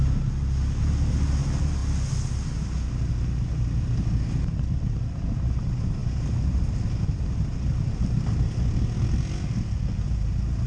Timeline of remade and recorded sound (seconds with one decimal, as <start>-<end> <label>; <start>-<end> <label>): 0.0-10.7 recorded